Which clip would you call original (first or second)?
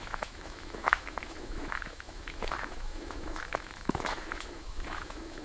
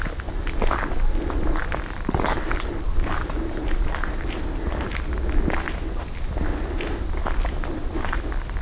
second